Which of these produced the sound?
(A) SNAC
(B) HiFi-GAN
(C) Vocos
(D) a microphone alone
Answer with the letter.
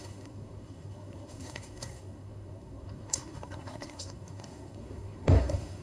A